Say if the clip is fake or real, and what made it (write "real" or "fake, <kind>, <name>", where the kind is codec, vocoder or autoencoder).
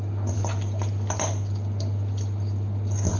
real